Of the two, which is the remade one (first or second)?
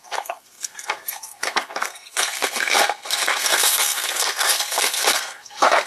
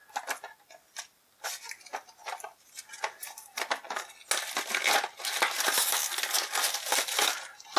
first